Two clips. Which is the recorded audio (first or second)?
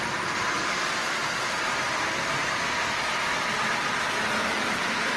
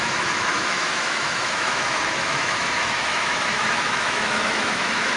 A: first